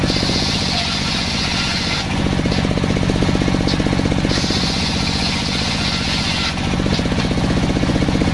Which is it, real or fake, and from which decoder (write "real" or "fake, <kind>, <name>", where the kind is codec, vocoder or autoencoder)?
fake, vocoder, Vocos